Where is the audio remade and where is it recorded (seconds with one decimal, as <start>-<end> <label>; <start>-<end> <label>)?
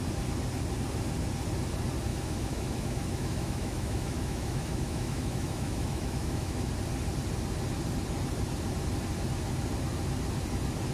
0.0-2.1 recorded; 2.1-6.7 remade; 6.7-10.9 recorded